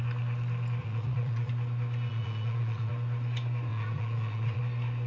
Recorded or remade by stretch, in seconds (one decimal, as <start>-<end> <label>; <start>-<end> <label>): 0.0-0.8 recorded; 0.8-1.5 remade; 1.5-2.1 recorded; 2.1-2.9 remade; 2.9-3.7 recorded; 3.7-4.6 remade; 4.6-5.1 recorded

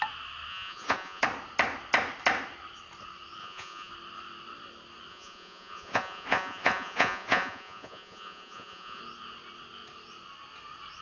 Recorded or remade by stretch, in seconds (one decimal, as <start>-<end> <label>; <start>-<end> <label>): 0.0-0.5 recorded; 0.5-1.2 remade; 1.2-3.4 recorded; 3.4-3.9 remade; 3.9-5.1 recorded; 5.1-9.0 remade; 9.0-11.0 recorded

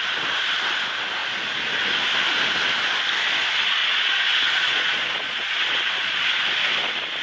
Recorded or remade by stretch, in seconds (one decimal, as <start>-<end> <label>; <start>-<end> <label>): 0.0-3.8 recorded; 3.8-6.3 remade; 6.3-7.2 recorded